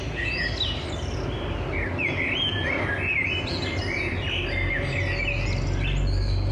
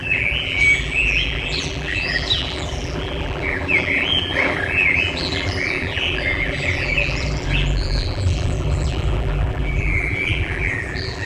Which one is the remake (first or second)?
second